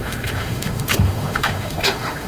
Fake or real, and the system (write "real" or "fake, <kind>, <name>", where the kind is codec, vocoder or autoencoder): fake, autoencoder, DAC-VAE